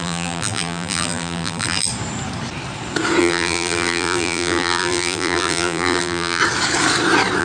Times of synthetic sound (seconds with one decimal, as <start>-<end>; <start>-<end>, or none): 0.0-1.9; 3.2-6.4